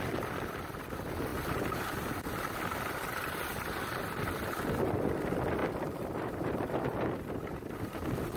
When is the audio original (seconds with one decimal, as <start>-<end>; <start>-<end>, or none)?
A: 0.0-1.3; 4.2-5.6; 7.2-8.4

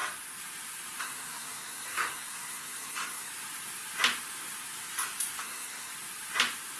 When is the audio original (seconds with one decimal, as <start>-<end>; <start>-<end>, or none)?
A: 0.0-1.0; 3.3-5.4; 5.9-6.8